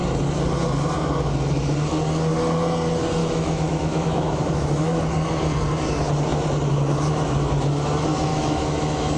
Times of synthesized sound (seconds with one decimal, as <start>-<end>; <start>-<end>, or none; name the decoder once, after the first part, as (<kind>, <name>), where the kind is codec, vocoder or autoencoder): 3.2-5.0 (autoencoder, DAC-VAE); 8.3-9.2